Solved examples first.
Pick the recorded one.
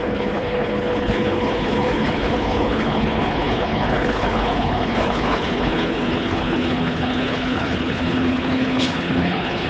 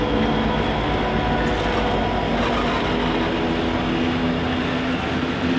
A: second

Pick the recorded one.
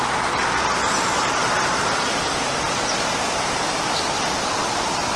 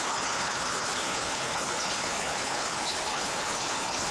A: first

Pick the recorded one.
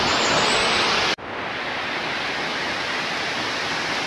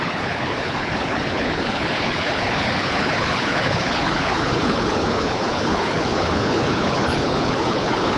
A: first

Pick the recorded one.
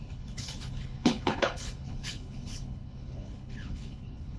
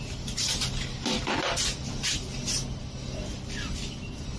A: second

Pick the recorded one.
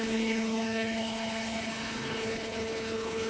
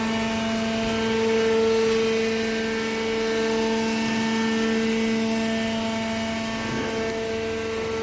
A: second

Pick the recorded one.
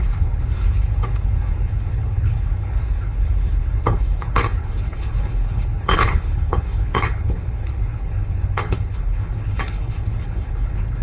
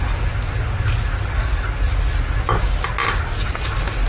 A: second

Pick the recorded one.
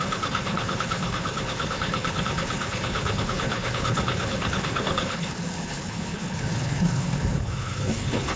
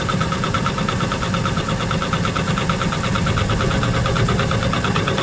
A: second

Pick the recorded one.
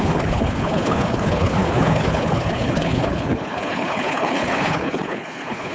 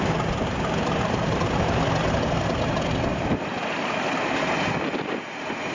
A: second